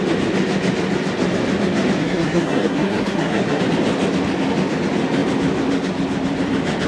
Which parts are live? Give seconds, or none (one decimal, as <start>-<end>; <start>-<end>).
0.0-2.0; 3.6-6.9